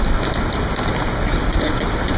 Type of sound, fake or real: real